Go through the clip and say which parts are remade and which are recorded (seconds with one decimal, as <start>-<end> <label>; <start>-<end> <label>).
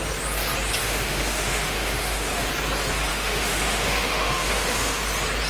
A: 0.0-0.8 recorded; 0.8-2.5 remade; 2.5-3.1 recorded; 3.1-5.0 remade; 5.0-5.5 recorded